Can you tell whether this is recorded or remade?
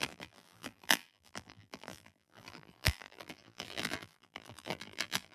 remade